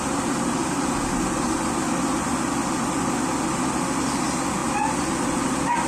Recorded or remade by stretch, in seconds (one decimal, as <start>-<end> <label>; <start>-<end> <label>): 0.0-5.9 recorded